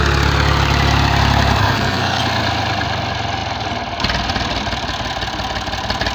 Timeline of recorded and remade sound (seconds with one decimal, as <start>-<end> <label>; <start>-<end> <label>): 0.0-1.6 recorded; 1.6-2.2 remade; 2.2-6.1 recorded

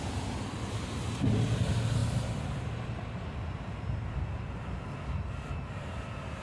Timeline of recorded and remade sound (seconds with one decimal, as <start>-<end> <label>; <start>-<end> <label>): 0.0-6.4 recorded

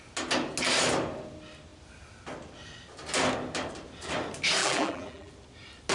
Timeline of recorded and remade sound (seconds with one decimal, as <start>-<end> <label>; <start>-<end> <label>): 0.0-4.6 recorded; 4.6-5.3 remade; 5.3-5.9 recorded